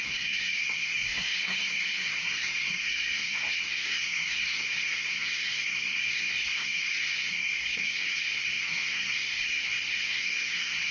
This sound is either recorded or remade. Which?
remade